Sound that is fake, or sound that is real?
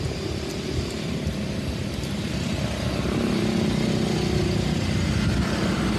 real